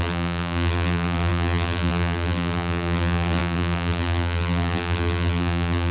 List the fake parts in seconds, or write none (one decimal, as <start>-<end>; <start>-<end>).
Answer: 0.0-5.9